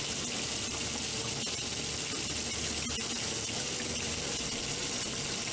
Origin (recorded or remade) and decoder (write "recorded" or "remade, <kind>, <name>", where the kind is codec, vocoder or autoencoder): recorded